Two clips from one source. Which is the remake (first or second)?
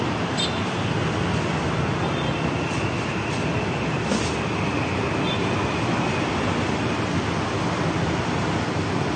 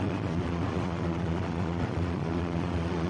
second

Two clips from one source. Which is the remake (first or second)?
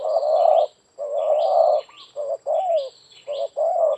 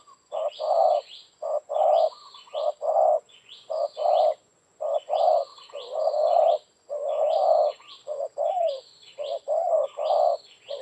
second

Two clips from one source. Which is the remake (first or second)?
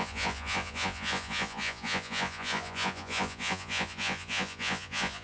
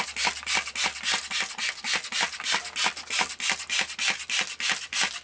first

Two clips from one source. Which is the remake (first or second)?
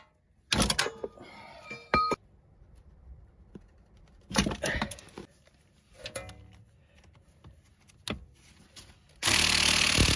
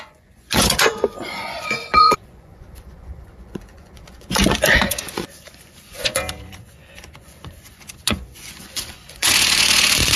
second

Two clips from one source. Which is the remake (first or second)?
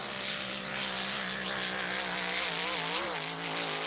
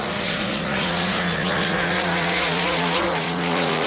second